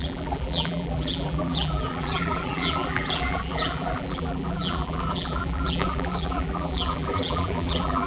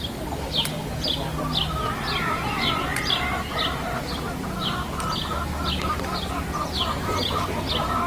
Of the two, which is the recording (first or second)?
second